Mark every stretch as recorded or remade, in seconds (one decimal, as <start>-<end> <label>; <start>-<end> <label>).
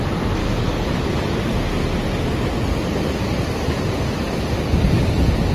0.0-0.4 recorded; 0.4-0.9 remade; 0.9-5.5 recorded